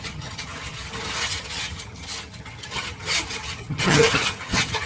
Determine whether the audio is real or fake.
fake